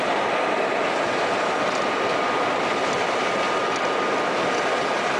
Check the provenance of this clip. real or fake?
real